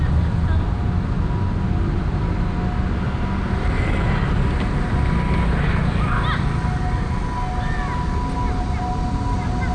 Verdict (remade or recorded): recorded